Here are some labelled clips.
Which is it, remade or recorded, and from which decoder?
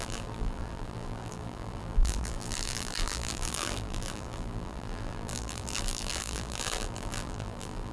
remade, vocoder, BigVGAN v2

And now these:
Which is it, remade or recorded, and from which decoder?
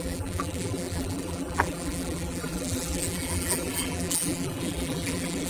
remade, vocoder, BigVGAN v2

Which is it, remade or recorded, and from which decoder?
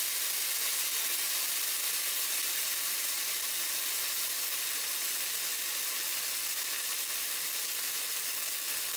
recorded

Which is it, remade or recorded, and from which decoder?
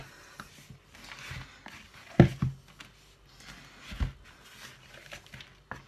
recorded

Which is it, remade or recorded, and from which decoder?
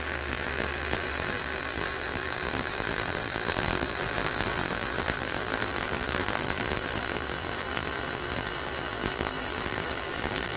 remade, vocoder, BigVGAN v2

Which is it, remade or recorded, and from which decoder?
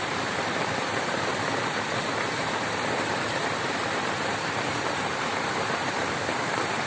remade, vocoder, BigVGAN v2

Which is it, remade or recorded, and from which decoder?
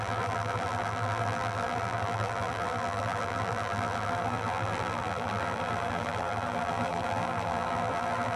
remade, vocoder, BigVGAN v2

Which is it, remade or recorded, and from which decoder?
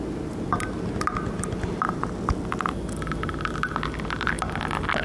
recorded